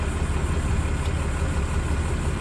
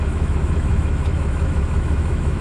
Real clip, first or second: first